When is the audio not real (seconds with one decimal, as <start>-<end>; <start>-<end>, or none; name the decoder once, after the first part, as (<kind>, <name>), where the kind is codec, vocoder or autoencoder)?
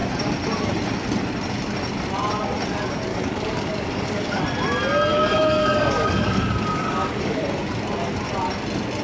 3.1-4.4 (codec, DAC); 5.1-7.4